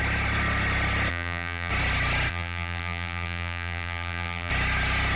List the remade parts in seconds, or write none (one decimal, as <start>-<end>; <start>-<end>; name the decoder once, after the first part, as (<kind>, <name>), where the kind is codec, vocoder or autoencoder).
1.1-1.7 (vocoder, BigVGAN v2); 2.3-4.5